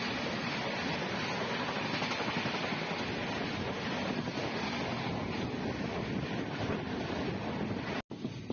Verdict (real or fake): real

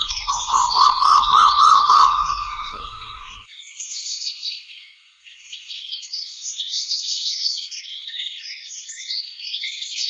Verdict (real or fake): fake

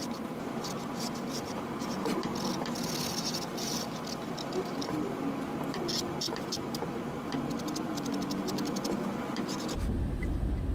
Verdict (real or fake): real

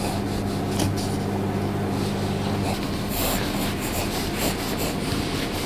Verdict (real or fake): real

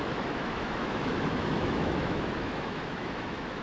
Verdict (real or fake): fake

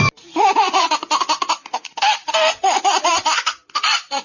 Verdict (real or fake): real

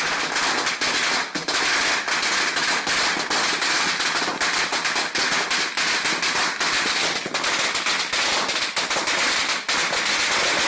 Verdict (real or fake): real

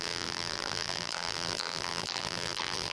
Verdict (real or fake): fake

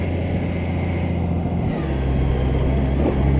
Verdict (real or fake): real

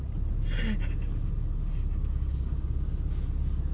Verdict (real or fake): real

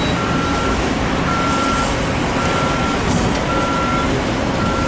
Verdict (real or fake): real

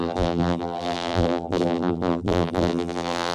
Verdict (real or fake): fake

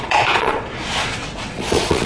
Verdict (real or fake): fake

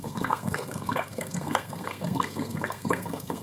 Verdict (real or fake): fake